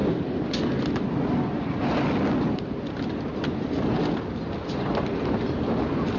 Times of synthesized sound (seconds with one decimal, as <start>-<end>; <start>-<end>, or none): none